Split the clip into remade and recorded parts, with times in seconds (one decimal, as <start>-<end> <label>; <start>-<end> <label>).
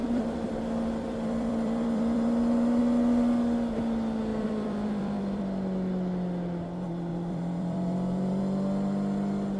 0.0-2.8 remade; 2.8-4.3 recorded; 4.3-5.4 remade; 5.4-7.1 recorded; 7.1-8.4 remade; 8.4-9.6 recorded